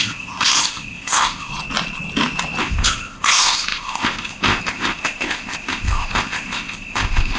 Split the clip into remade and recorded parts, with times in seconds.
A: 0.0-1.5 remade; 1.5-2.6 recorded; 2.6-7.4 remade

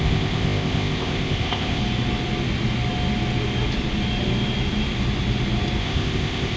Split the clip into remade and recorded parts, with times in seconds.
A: 0.0-1.8 remade; 1.8-5.8 recorded; 5.8-6.6 remade